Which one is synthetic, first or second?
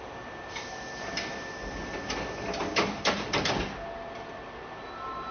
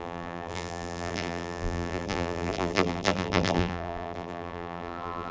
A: second